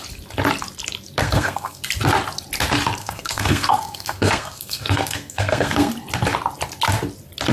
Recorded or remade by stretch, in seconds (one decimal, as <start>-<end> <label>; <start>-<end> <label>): 0.0-1.2 recorded; 1.2-1.8 remade; 1.8-3.0 recorded; 3.0-5.9 remade; 5.9-7.5 recorded